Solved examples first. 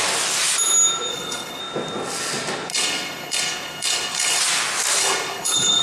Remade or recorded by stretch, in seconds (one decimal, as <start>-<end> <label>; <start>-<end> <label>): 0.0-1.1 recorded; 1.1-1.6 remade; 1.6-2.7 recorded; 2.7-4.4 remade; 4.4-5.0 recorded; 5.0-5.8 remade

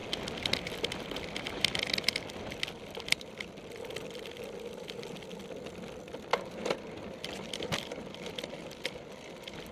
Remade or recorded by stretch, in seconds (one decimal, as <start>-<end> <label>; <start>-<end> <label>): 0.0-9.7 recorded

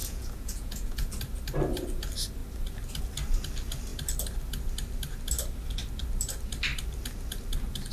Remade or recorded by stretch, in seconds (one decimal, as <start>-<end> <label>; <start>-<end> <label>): 0.0-1.1 remade; 1.1-7.9 recorded

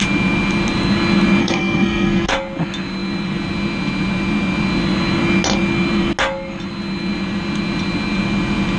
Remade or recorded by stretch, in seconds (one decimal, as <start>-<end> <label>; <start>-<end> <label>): 0.0-1.4 recorded; 1.4-2.3 remade; 2.3-8.8 recorded

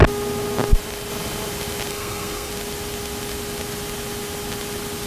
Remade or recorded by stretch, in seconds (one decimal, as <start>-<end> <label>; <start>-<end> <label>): 0.0-1.9 recorded; 1.9-2.5 remade; 2.5-5.1 recorded